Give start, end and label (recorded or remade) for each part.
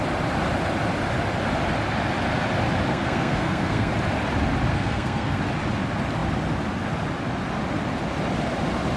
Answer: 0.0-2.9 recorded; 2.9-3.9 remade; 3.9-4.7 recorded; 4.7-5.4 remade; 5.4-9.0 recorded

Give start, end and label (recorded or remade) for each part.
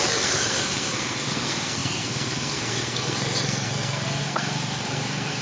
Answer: 0.0-5.4 remade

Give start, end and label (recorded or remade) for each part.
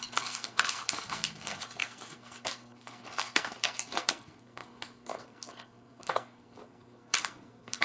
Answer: 0.0-7.8 remade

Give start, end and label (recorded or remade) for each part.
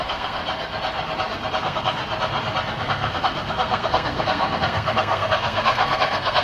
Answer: 0.0-0.4 remade; 0.4-1.6 recorded; 1.6-2.0 remade; 2.0-2.8 recorded; 2.8-6.4 remade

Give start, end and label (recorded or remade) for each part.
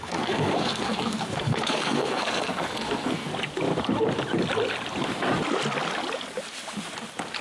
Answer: 0.0-3.3 remade; 3.3-7.4 recorded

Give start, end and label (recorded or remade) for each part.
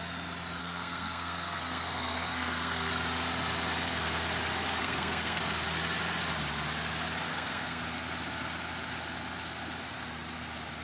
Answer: 0.0-0.6 recorded; 0.6-2.9 remade; 2.9-4.8 recorded; 4.8-5.4 remade; 5.4-7.3 recorded; 7.3-7.8 remade; 7.8-10.8 recorded